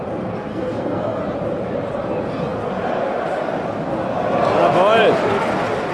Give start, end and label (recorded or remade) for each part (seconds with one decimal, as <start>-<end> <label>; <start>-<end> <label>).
0.0-0.5 recorded; 0.5-1.2 remade; 1.2-5.9 recorded